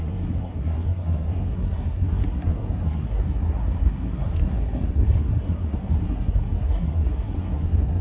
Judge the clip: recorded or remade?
remade